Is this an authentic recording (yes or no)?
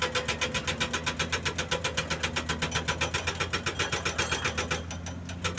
yes